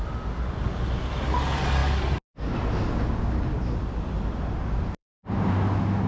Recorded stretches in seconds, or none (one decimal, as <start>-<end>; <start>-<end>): 0.0-5.0; 5.5-6.1